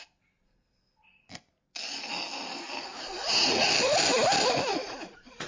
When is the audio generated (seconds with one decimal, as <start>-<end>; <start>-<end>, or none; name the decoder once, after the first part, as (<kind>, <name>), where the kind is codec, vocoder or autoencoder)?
2.9-3.7 (vocoder, Vocos); 4.7-5.5